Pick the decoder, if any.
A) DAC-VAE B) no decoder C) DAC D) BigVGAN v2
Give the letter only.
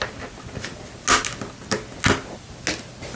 B